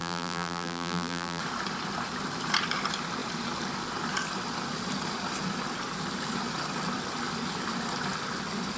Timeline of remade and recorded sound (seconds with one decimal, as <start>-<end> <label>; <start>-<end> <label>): 0.0-1.4 remade; 1.4-8.8 recorded